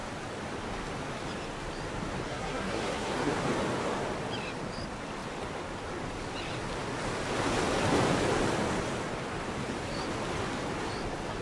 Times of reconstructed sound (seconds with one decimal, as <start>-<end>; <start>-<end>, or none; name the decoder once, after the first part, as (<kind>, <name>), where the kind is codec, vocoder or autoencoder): 2.3-3.3 (codec, SNAC)